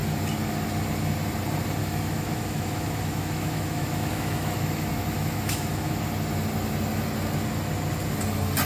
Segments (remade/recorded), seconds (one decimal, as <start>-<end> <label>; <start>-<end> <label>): 0.0-1.8 recorded; 1.8-6.0 remade; 6.0-8.7 recorded